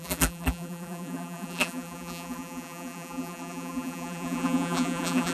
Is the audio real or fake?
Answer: fake